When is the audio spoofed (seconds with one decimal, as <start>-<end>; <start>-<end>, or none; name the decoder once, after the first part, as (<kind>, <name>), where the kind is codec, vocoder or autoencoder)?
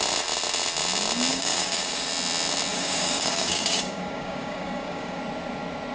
1.3-2.1 (codec, DAC); 2.7-5.2